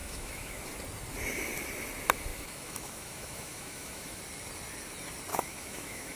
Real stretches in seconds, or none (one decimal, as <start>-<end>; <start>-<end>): 0.6-2.3; 4.2-5.3